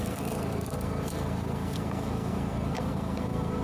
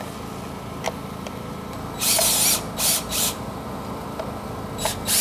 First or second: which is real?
second